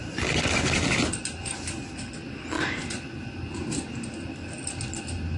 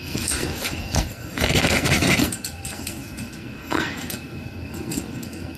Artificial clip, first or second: second